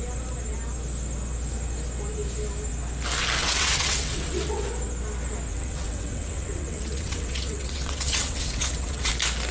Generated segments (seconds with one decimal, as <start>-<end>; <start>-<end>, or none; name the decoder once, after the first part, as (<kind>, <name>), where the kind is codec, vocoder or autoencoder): 3.4-4.6 (vocoder, WaveNeXt); 5.5-9.1